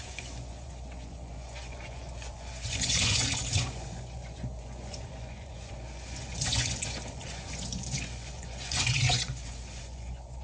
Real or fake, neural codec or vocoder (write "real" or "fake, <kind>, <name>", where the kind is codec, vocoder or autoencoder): fake, vocoder, Vocos